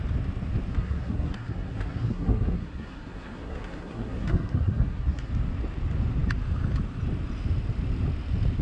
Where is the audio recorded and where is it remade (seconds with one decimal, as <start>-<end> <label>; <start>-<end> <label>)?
0.0-0.7 recorded; 0.7-5.3 remade; 5.3-8.6 recorded